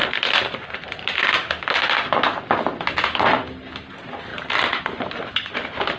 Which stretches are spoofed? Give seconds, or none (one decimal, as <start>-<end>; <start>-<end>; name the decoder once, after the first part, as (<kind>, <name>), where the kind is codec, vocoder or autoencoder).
none